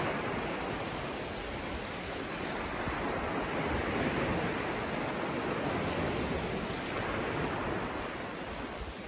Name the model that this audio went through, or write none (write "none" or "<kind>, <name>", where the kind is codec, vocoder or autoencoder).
none